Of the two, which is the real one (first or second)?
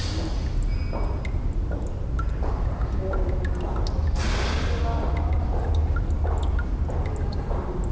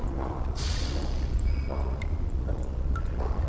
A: first